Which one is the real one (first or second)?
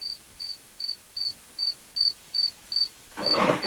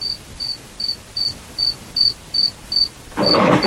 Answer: second